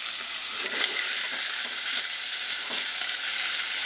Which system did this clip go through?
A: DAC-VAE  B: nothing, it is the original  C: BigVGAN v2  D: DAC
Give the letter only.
B